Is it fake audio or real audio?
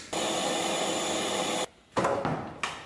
real